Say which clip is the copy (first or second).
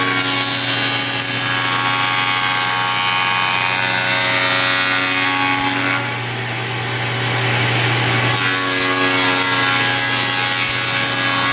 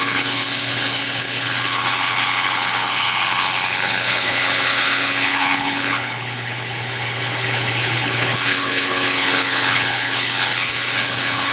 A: second